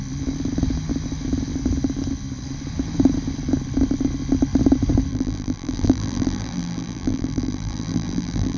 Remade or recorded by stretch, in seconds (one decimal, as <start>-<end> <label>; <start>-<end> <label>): 0.0-5.1 recorded; 5.1-8.6 remade